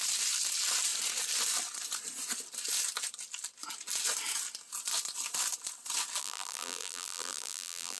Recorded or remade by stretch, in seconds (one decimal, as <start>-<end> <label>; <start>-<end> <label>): 0.0-6.2 recorded; 6.2-8.0 remade